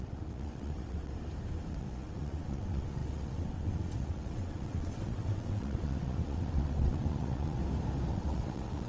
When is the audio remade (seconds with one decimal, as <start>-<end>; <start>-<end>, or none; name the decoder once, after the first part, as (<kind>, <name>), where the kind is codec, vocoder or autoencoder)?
0.0-1.1 (vocoder, WaveNeXt); 1.7-7.6; 8.1-8.9